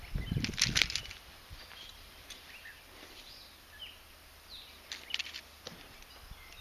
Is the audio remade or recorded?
recorded